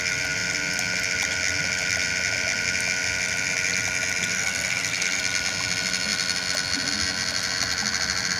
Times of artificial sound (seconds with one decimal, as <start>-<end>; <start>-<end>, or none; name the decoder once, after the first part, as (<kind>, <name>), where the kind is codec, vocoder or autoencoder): 4.3-5.2 (codec, SNAC)